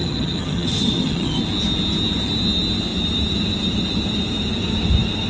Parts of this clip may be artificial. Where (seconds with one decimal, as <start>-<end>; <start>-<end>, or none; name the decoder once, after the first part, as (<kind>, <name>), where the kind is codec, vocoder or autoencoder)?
0.0-1.4 (vocoder, HiFi-GAN)